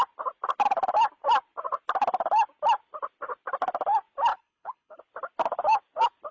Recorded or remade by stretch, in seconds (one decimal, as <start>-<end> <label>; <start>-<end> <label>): 0.0-4.3 recorded; 4.3-5.0 remade; 5.0-6.3 recorded

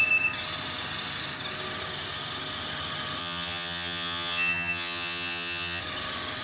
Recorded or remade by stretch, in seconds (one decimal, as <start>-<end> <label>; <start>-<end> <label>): 0.0-3.2 recorded; 3.2-5.8 remade; 5.8-6.4 recorded

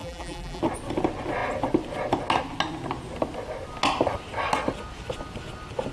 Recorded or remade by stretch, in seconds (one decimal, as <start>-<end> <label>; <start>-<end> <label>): 0.0-0.6 remade; 0.6-5.9 recorded

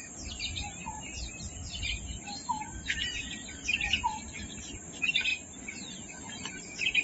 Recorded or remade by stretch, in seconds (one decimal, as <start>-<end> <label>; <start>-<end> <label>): 0.0-1.6 recorded; 1.6-3.3 remade; 3.3-5.3 recorded; 5.3-6.6 remade; 6.6-7.0 recorded

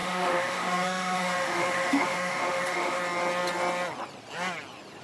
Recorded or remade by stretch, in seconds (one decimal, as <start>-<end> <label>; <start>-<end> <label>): 0.0-3.0 remade; 3.0-5.0 recorded

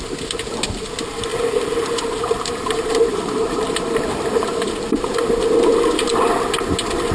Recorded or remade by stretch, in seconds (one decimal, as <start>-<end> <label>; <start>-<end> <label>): 0.0-1.3 recorded; 1.3-4.7 remade; 4.7-7.1 recorded

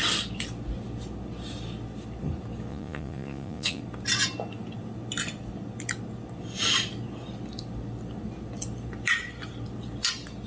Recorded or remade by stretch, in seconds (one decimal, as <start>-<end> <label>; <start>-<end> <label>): 0.0-2.7 recorded; 2.7-3.8 remade; 3.8-10.5 recorded

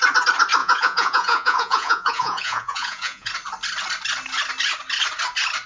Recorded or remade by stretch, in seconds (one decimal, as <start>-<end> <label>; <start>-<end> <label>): 0.0-0.6 recorded; 0.6-3.3 remade; 3.3-5.7 recorded